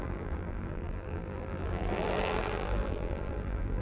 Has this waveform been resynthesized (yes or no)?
yes